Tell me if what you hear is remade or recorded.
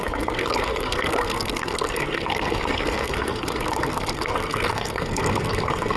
remade